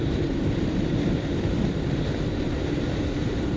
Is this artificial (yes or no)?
yes